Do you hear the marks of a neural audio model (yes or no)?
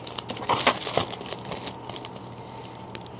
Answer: no